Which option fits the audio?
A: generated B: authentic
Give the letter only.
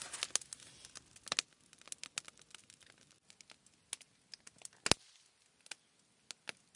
B